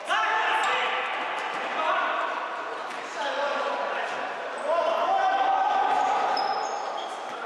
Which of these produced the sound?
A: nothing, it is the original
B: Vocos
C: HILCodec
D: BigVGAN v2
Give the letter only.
A